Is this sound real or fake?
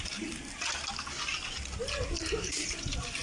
real